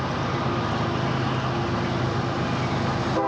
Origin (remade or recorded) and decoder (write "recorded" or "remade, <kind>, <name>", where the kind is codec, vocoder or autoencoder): recorded